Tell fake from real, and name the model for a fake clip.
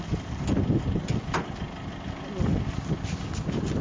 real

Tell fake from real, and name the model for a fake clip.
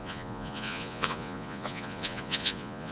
fake, vocoder, Vocos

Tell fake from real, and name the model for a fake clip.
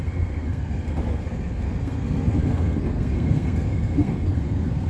fake, codec, SNAC